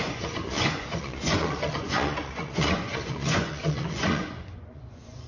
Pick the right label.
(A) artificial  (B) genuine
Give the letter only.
A